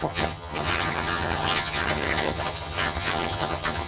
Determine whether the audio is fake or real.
fake